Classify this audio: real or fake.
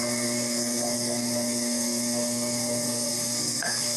fake